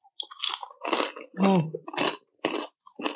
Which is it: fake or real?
real